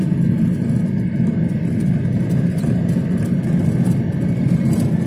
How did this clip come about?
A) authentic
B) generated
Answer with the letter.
A